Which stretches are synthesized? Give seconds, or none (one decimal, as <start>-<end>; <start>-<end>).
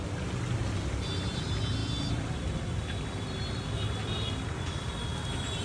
none